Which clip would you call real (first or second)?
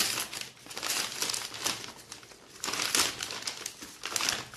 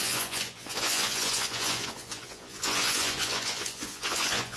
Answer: first